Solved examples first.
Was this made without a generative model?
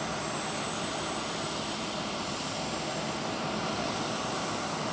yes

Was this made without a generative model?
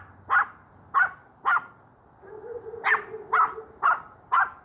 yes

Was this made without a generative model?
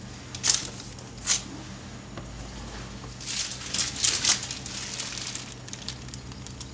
yes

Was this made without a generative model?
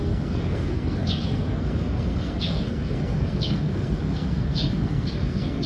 no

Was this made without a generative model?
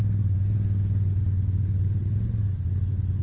yes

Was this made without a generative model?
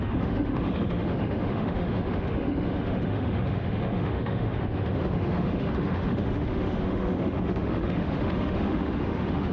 no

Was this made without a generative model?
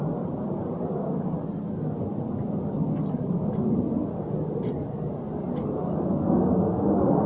yes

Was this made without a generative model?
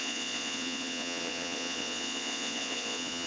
no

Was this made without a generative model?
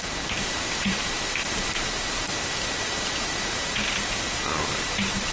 no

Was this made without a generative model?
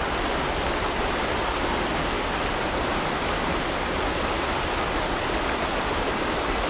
yes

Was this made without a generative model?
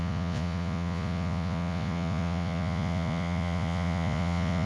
no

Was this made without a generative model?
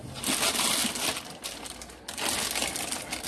yes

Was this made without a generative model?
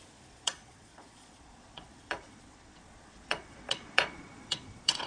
no